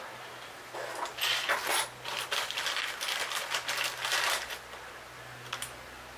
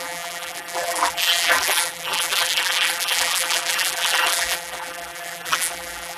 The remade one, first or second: second